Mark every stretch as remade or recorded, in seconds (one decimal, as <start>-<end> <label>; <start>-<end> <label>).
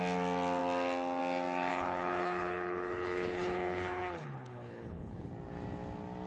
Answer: 0.0-1.7 recorded; 1.7-5.3 remade; 5.3-6.3 recorded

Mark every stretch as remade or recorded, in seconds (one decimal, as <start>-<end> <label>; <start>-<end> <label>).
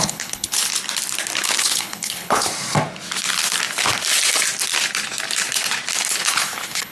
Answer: 0.0-0.7 remade; 0.7-1.6 recorded; 1.6-2.5 remade; 2.5-6.1 recorded; 6.1-6.9 remade